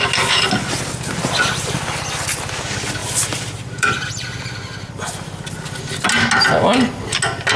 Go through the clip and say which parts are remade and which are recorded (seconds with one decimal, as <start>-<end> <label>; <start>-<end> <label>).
0.0-3.0 recorded; 3.0-4.4 remade; 4.4-7.6 recorded